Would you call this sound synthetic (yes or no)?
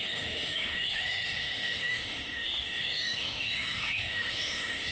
yes